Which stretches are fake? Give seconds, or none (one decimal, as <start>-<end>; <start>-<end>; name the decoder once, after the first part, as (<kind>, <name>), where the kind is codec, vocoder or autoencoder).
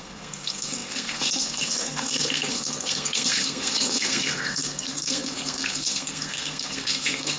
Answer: 0.0-7.4 (codec, SNAC)